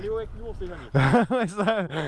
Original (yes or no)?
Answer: yes